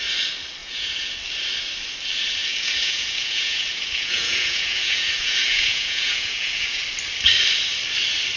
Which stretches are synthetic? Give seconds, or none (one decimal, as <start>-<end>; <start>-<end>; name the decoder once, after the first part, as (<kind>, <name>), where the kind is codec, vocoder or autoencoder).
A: 0.6-1.1 (vocoder, Vocos); 2.5-6.8